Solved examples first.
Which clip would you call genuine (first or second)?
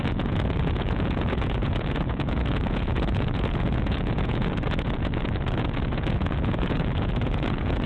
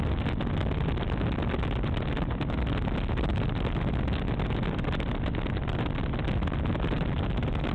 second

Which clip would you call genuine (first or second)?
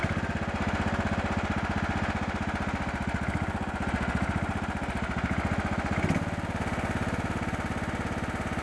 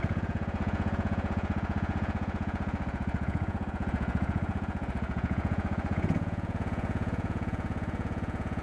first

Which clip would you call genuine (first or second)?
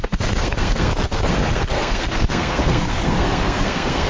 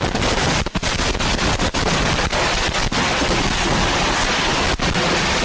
second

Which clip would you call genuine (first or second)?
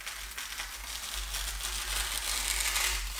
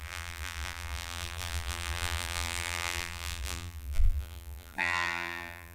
first